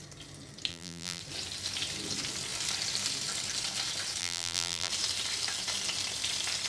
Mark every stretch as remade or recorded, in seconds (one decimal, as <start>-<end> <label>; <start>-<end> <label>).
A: 0.0-0.7 recorded; 0.7-1.2 remade; 1.2-4.2 recorded; 4.2-4.9 remade; 4.9-6.7 recorded